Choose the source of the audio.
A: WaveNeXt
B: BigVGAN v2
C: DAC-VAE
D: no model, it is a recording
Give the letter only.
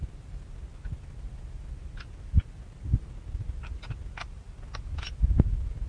D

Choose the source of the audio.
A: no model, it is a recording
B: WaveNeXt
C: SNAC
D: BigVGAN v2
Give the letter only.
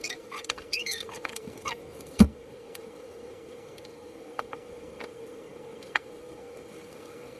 C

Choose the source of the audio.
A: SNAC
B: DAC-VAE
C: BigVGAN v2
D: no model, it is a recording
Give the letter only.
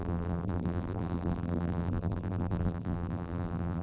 C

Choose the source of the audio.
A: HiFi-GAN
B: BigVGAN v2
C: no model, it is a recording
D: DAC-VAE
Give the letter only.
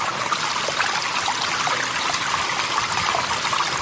C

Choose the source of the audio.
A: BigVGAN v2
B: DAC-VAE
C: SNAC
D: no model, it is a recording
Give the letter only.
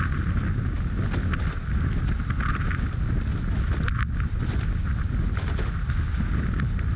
D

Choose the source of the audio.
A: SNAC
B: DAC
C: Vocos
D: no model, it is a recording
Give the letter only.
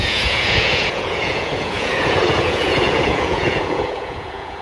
C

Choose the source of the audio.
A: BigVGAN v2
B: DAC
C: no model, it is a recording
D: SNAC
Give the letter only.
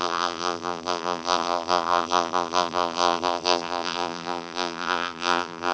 A